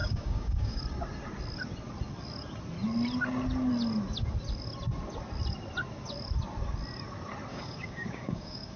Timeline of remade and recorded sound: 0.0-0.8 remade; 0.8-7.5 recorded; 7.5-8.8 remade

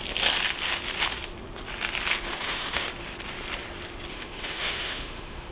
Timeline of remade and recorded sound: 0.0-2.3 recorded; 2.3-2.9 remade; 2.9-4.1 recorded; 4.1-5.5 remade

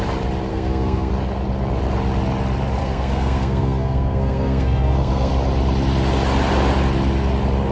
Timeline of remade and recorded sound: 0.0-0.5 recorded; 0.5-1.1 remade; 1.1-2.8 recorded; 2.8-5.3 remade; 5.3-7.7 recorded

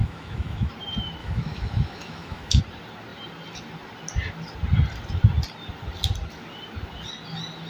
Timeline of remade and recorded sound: 0.0-0.7 remade; 0.7-1.2 recorded; 1.2-2.6 remade; 2.6-7.7 recorded